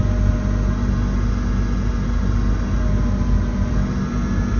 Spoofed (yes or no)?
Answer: no